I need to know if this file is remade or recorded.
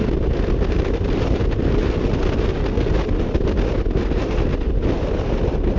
recorded